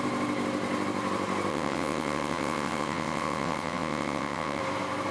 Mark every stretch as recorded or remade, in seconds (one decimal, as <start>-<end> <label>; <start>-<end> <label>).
0.0-1.5 recorded; 1.5-4.6 remade; 4.6-5.1 recorded